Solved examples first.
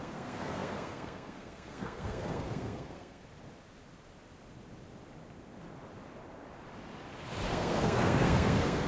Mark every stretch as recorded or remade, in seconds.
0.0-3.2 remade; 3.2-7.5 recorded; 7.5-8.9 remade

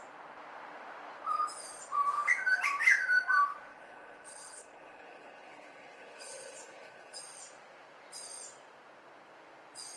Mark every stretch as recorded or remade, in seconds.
0.0-3.7 recorded; 3.7-7.2 remade; 7.2-10.0 recorded

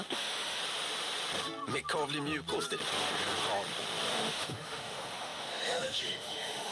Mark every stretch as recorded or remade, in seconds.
0.0-0.6 remade; 0.6-4.1 recorded; 4.1-6.7 remade

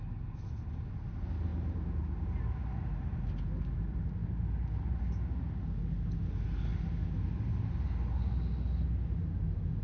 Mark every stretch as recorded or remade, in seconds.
0.0-9.8 recorded